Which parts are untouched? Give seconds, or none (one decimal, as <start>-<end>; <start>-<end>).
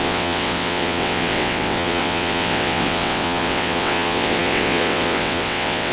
none